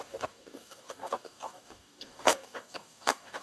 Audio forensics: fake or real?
fake